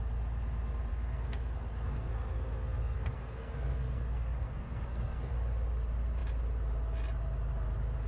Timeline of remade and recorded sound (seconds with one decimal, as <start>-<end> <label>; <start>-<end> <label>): 0.0-0.9 recorded; 0.9-5.3 remade; 5.3-8.1 recorded